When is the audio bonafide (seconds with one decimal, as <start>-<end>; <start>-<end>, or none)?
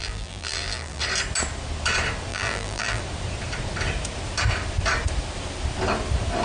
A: 1.0-2.3; 3.0-6.4